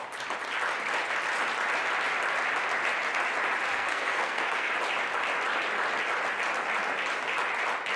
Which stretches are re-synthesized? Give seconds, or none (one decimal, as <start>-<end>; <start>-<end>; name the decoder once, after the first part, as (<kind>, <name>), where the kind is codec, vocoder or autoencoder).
3.7-4.7 (codec, SNAC)